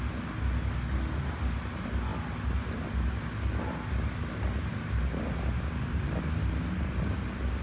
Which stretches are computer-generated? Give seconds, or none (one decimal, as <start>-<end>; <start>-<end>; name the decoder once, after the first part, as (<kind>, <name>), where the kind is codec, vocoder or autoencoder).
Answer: none

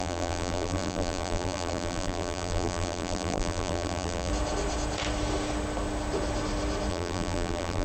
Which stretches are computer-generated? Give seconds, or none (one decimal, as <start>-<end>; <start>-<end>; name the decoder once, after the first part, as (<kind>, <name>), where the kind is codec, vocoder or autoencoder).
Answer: 0.0-4.3 (vocoder, BigVGAN v2); 6.9-7.8

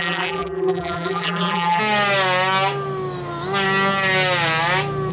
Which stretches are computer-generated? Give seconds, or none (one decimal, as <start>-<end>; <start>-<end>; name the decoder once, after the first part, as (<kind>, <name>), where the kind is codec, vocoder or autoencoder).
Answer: 0.0-1.8 (vocoder, BigVGAN v2)

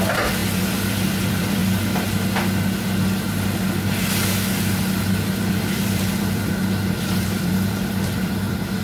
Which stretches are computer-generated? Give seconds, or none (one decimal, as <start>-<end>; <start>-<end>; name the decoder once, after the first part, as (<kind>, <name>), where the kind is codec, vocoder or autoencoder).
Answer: 0.0-1.6 (vocoder, BigVGAN v2); 5.2-8.8